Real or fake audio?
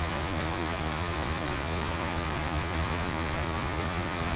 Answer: fake